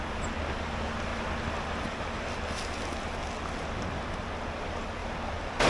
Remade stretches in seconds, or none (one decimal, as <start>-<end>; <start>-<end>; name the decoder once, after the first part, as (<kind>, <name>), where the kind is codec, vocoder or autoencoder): none